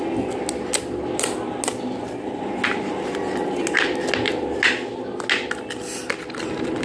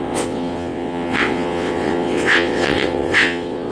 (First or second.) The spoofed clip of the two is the second